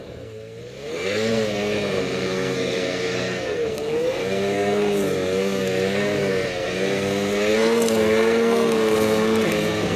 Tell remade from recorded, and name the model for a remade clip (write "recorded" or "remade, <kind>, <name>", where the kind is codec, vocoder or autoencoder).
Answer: remade, codec, SNAC